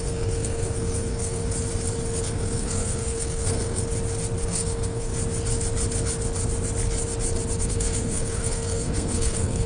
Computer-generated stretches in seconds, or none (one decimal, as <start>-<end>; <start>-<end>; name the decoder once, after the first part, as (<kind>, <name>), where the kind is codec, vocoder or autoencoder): 0.0-1.4 (codec, SNAC); 2.2-3.8; 4.4-5.1; 7.6-9.7